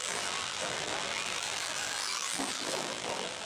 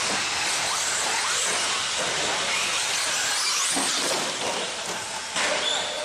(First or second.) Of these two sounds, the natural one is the second